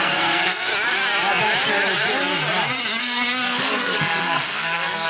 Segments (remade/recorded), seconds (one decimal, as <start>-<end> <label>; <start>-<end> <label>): 0.0-0.7 remade; 0.7-3.0 recorded; 3.0-5.1 remade

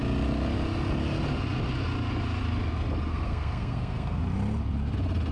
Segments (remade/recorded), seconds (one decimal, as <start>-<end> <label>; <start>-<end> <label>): 0.0-3.1 recorded; 3.1-4.2 remade; 4.2-5.3 recorded